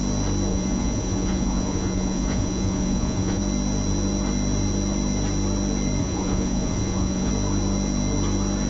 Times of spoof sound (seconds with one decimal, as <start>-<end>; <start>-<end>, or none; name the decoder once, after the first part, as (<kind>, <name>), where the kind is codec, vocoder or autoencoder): 0.5-3.4 (vocoder, Vocos); 6.0-7.3